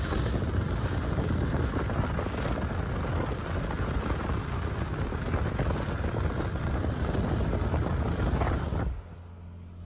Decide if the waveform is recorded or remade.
recorded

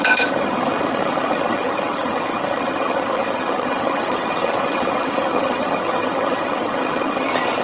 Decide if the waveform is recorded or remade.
remade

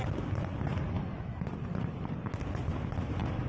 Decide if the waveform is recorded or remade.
recorded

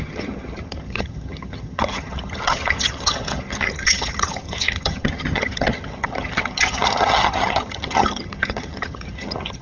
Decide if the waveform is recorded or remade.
remade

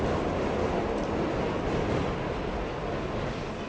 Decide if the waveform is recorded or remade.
recorded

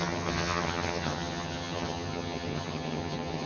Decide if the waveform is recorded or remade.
remade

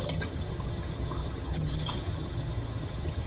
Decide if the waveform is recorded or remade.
remade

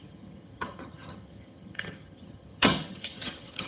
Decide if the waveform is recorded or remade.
remade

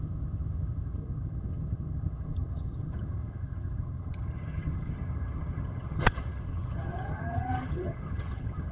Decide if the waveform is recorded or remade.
remade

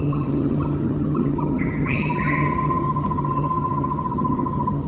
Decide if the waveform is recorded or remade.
remade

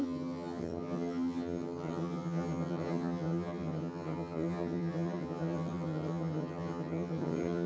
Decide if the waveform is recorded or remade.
remade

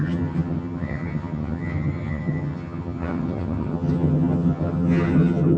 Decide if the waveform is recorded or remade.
remade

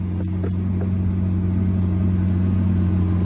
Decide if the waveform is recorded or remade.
recorded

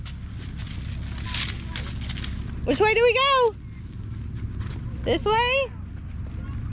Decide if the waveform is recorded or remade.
recorded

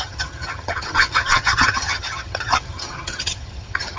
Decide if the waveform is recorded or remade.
remade